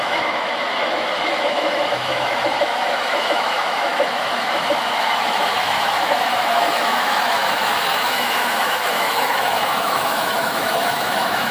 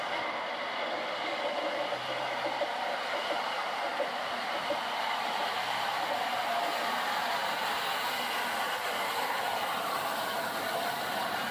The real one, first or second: second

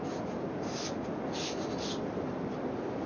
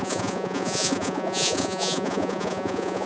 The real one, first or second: first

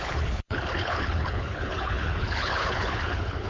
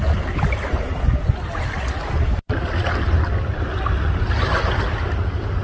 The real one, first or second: second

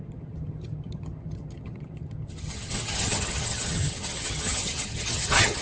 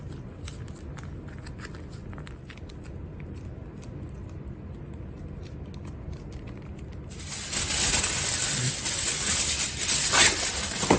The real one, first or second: second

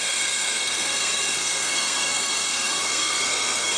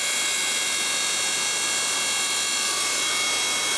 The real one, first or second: second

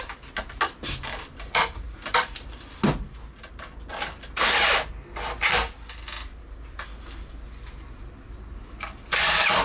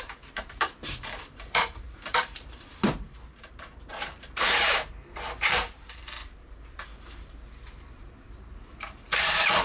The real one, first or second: first